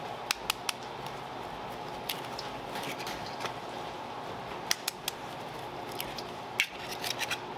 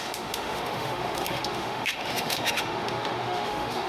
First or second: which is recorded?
first